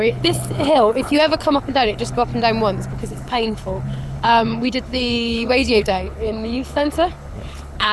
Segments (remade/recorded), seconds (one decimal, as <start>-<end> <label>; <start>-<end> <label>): 0.0-2.3 remade; 2.3-2.9 recorded; 2.9-7.9 remade